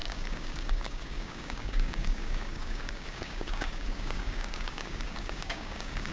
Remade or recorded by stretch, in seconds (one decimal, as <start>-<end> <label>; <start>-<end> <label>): 0.0-6.1 remade